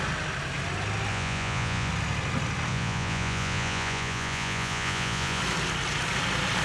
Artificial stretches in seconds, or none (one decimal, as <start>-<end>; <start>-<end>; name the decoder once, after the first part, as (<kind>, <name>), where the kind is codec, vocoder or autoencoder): 1.1-1.9 (vocoder, Vocos); 2.7-5.4